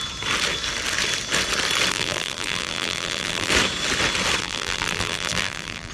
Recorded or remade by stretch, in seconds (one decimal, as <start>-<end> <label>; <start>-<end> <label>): 0.0-1.9 recorded; 1.9-3.5 remade; 3.5-4.4 recorded; 4.4-5.9 remade